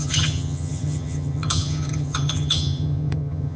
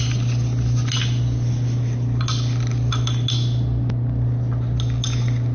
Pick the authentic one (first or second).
second